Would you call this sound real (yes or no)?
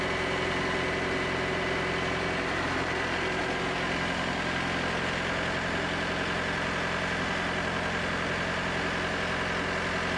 yes